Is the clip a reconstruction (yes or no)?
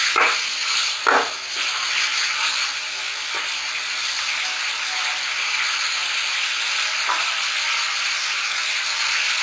no